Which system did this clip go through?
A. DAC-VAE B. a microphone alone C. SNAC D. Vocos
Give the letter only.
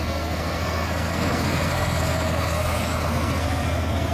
C